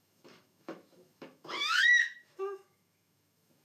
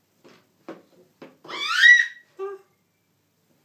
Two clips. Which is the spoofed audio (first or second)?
first